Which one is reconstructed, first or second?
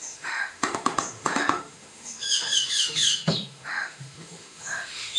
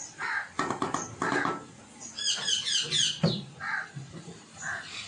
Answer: first